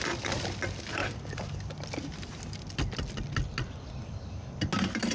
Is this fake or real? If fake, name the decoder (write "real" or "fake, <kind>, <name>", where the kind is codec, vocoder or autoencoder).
real